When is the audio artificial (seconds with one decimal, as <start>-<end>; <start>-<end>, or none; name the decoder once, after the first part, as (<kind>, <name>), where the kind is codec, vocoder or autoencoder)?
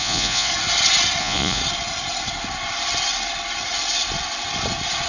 0.0-0.5 (vocoder, Vocos); 1.2-1.6